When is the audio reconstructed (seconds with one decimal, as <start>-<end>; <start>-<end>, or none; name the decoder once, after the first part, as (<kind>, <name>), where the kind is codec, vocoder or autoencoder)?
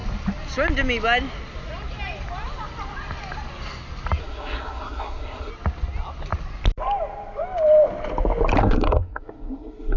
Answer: 4.2-5.5 (codec, SNAC); 8.6-10.0